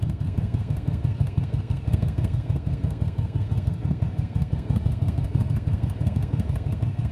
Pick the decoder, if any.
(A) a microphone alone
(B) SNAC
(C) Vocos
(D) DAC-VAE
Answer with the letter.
B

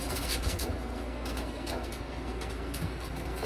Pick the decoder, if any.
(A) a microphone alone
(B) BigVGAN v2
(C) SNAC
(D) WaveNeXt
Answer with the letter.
C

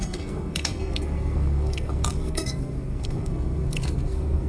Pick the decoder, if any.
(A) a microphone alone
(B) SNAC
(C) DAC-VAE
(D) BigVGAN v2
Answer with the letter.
B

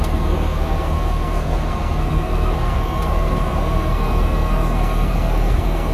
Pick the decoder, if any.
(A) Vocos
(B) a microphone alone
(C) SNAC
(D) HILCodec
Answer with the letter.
C